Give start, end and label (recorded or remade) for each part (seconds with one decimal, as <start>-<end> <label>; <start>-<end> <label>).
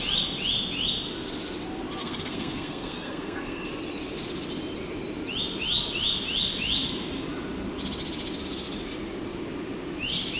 0.0-2.0 recorded; 2.0-3.7 remade; 3.7-10.4 recorded